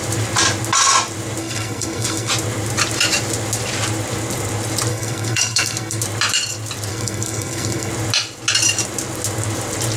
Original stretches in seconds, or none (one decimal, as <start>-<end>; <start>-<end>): 0.0-1.4; 2.3-4.9; 6.0-6.9; 7.9-10.0